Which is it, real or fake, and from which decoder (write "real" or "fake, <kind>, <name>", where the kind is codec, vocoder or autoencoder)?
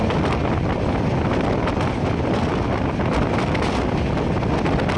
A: real